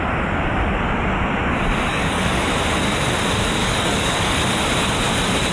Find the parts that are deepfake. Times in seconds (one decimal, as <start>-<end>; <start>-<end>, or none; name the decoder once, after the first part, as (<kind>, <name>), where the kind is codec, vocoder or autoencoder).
1.9-2.6 (codec, DAC); 3.6-4.4